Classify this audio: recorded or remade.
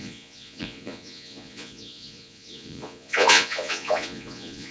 remade